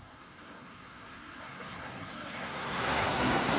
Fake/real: fake